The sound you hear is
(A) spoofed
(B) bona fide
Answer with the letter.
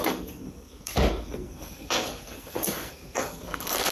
A